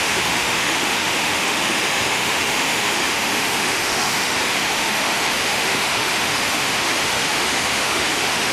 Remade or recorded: remade